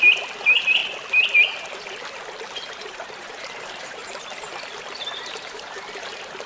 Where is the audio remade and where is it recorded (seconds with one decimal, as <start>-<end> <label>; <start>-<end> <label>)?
0.0-0.8 remade; 0.8-3.2 recorded; 3.2-4.0 remade; 4.0-5.3 recorded; 5.3-6.5 remade